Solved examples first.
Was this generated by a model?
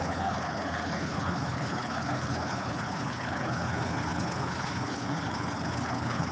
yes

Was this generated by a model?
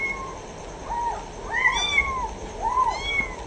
no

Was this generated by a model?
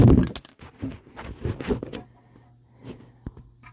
no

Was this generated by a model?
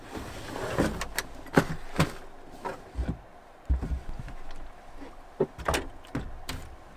no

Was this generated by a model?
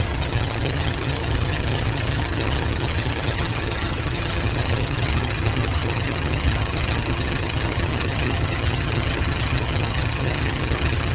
yes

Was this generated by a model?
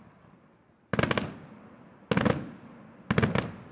no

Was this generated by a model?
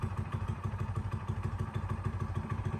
yes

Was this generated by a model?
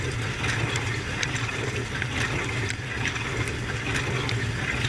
no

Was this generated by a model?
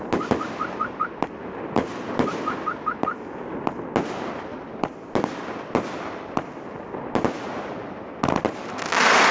no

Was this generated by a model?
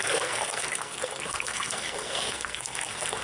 yes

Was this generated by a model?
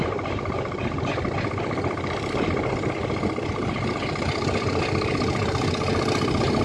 no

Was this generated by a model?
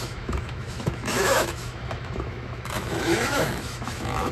yes